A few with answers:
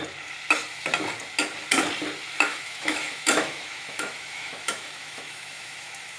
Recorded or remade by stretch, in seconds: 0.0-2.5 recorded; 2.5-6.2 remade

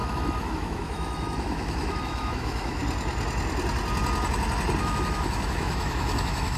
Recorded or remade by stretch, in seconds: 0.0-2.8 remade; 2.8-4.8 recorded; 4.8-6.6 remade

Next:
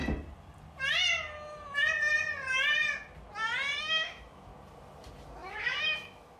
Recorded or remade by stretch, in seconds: 0.0-3.8 recorded; 3.8-4.5 remade; 4.5-5.5 recorded; 5.5-6.4 remade

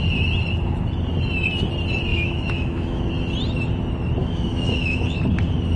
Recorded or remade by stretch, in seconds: 0.0-2.1 recorded; 2.1-3.1 remade; 3.1-4.2 recorded; 4.2-5.2 remade; 5.2-5.8 recorded

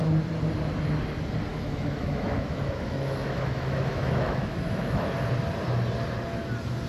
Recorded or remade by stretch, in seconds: 0.0-1.5 recorded; 1.5-5.1 remade; 5.1-6.9 recorded

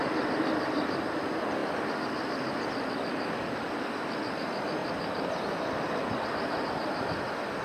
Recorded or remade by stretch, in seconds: 0.0-7.6 recorded